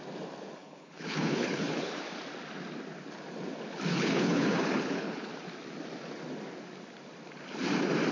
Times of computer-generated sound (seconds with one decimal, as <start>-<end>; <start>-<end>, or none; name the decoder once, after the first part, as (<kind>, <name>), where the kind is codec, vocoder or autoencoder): 0.6-2.0 (codec, HILCodec); 3.9-5.3